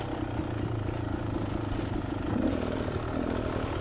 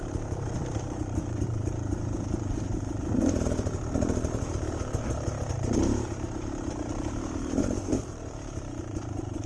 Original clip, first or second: first